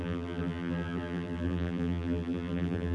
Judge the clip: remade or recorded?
remade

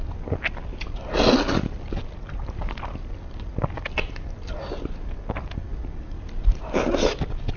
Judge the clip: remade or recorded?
recorded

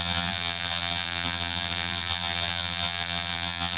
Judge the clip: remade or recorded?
remade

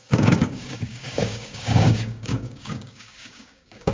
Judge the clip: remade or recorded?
remade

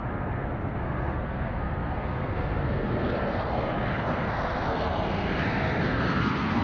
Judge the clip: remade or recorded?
remade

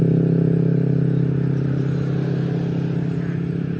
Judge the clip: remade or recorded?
recorded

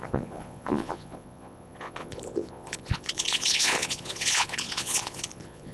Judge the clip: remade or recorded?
remade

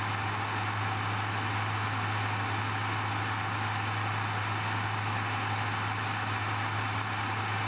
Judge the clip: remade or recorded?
recorded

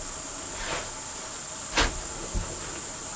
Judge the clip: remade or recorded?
recorded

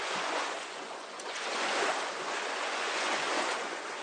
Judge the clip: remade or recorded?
remade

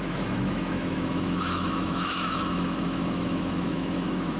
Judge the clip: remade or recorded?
remade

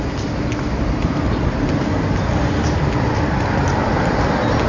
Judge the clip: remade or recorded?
recorded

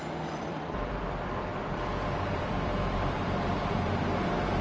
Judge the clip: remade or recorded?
remade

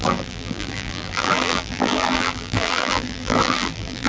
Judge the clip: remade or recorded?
remade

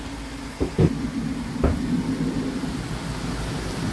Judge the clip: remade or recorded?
recorded